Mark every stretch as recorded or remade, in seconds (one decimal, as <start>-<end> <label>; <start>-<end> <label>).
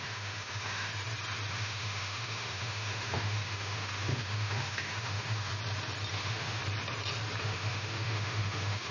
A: 0.0-0.9 remade; 0.9-1.5 recorded; 1.5-5.5 remade; 5.5-6.1 recorded; 6.1-6.6 remade; 6.6-7.4 recorded; 7.4-8.9 remade